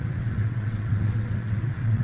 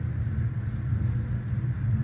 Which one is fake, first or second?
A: first